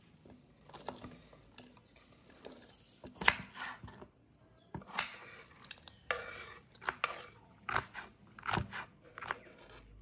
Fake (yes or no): no